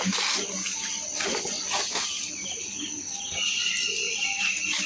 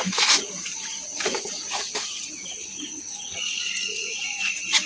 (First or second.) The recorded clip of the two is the first